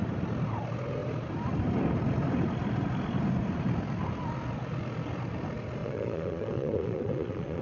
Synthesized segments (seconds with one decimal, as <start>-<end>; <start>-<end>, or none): 5.8-7.6